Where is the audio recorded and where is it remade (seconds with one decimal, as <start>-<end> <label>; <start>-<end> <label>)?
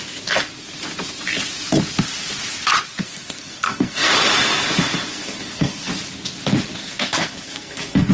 0.0-3.0 recorded; 3.0-4.1 remade; 4.1-5.1 recorded; 5.1-5.9 remade; 5.9-6.8 recorded; 6.8-8.1 remade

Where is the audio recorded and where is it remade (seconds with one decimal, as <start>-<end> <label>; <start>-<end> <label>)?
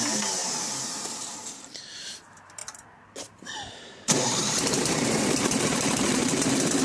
0.0-6.8 remade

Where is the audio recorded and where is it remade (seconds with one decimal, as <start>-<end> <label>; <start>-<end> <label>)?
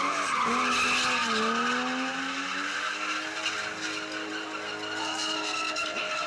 0.0-5.0 recorded; 5.0-6.3 remade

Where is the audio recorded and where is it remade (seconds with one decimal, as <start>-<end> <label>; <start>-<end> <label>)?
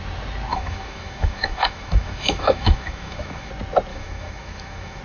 0.0-0.5 recorded; 0.5-3.5 remade; 3.5-3.9 recorded; 3.9-5.0 remade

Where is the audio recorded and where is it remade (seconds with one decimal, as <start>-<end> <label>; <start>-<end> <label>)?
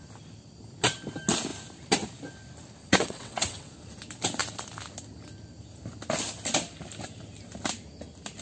0.0-2.8 recorded; 2.8-3.7 remade; 3.7-8.4 recorded